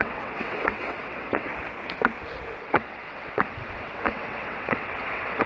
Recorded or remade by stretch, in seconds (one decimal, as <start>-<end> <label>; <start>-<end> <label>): 0.0-1.5 remade; 1.5-2.6 recorded; 2.6-5.5 remade